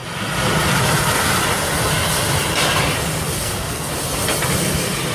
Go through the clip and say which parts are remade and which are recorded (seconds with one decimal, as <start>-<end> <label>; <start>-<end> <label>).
0.0-3.4 recorded; 3.4-3.9 remade; 3.9-5.1 recorded